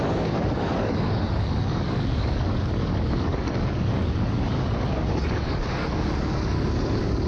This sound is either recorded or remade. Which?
remade